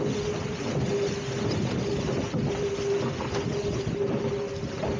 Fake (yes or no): no